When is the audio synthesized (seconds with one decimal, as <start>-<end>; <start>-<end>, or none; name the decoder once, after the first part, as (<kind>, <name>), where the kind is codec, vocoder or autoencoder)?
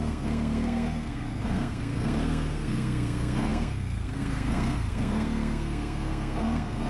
0.0-6.9 (codec, SNAC)